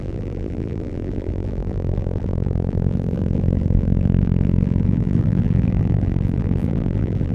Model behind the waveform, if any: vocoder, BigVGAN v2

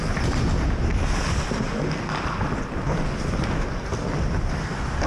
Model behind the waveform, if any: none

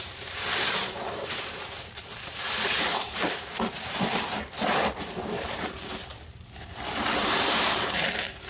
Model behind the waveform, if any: vocoder, BigVGAN v2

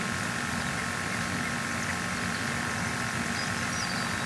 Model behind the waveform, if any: vocoder, BigVGAN v2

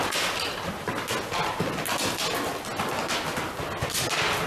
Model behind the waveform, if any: none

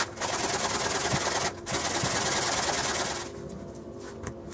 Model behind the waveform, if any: none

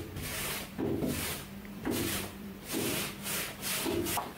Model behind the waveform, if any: vocoder, BigVGAN v2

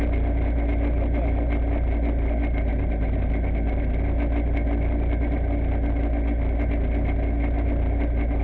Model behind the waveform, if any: none